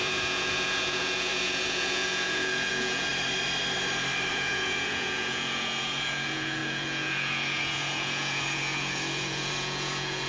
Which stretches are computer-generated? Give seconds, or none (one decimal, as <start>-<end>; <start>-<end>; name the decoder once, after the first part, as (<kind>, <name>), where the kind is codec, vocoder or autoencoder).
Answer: 0.0-3.1 (vocoder, Vocos); 4.3-10.3